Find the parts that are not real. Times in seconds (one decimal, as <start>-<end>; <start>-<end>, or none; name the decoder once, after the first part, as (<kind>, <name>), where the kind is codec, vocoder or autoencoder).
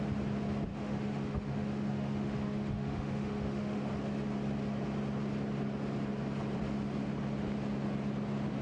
0.7-3.9 (autoencoder, DAC-VAE)